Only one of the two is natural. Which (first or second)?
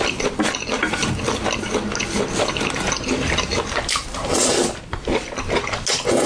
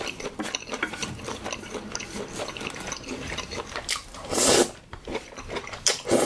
first